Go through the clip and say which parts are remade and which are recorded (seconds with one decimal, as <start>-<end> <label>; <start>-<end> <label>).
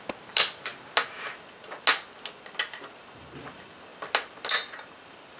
0.0-5.4 recorded